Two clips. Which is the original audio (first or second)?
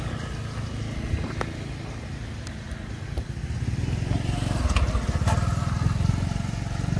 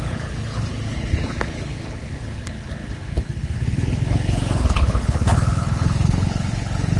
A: first